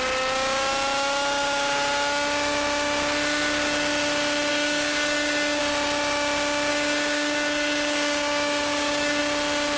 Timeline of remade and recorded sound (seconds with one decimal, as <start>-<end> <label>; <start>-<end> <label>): 0.0-4.5 recorded; 4.5-5.6 remade; 5.6-6.7 recorded; 6.7-9.2 remade; 9.2-9.8 recorded